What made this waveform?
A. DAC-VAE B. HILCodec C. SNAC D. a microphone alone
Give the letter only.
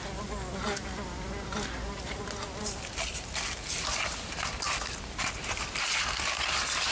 D